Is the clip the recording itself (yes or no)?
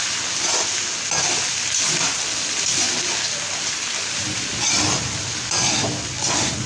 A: yes